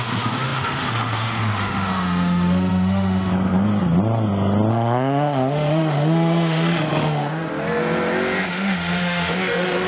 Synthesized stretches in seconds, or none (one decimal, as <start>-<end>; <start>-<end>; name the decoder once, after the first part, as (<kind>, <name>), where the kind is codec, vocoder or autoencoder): 0.0-3.3 (autoencoder, DAC-VAE); 4.7-7.5; 8.5-9.9